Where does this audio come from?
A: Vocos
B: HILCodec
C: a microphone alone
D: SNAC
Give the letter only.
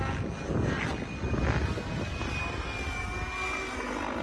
C